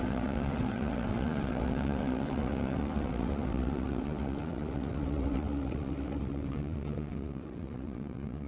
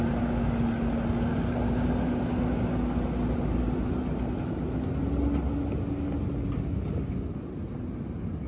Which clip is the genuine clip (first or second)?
second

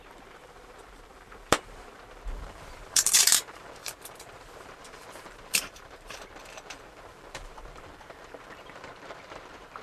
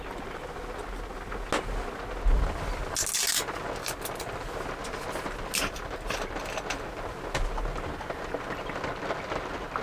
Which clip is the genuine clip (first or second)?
second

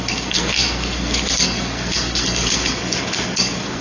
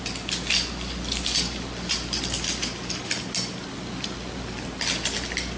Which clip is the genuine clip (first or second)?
second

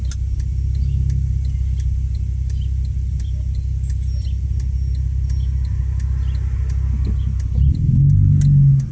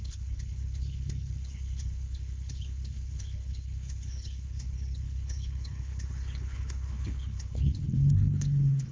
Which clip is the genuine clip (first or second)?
first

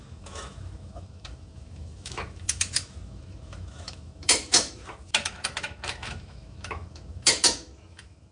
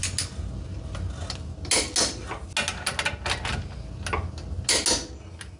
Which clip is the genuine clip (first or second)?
second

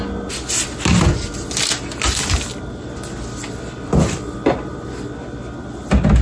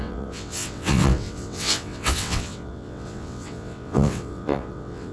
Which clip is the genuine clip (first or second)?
first